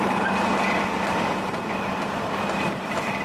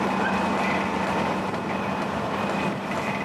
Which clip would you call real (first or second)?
second